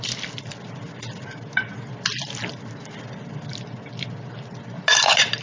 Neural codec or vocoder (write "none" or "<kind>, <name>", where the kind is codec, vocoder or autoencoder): none